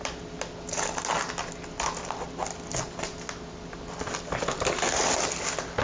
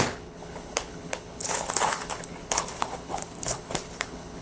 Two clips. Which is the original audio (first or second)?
first